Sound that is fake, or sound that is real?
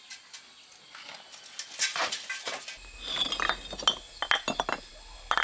real